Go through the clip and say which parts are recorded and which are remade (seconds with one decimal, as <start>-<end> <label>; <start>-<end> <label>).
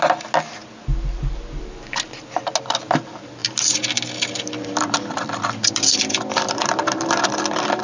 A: 0.0-3.4 recorded; 3.4-6.0 remade; 6.0-6.6 recorded; 6.6-7.8 remade